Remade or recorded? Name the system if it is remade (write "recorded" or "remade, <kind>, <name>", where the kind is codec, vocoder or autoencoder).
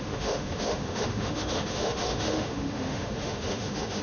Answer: remade, autoencoder, DAC-VAE